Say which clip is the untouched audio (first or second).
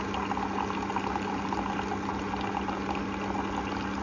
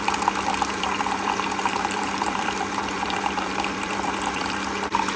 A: first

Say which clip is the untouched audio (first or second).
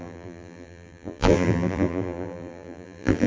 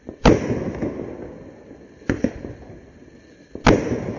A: second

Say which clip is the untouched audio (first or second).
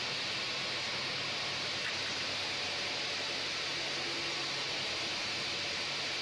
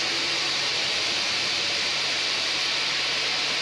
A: first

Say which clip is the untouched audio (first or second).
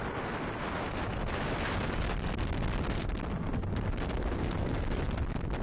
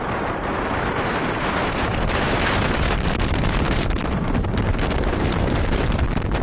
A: first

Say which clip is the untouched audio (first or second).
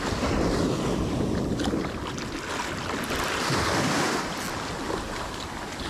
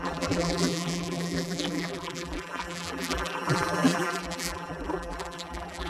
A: first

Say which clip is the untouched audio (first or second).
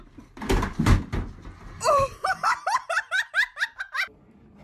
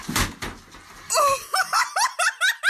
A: second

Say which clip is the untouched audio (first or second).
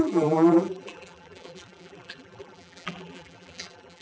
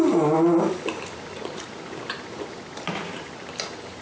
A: second